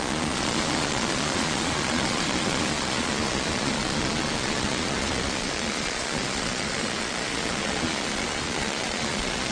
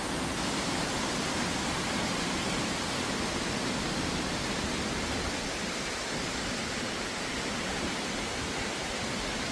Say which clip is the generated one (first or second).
first